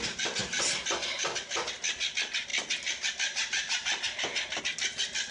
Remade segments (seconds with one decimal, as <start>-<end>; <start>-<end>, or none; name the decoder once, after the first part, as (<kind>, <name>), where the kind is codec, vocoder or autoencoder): none